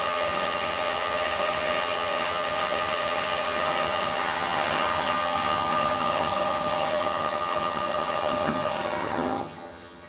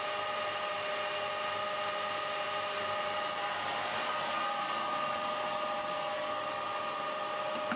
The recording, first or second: second